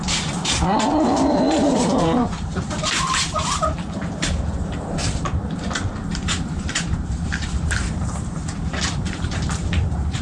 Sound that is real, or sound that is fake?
fake